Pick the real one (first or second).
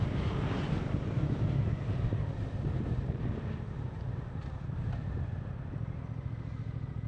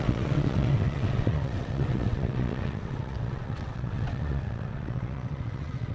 first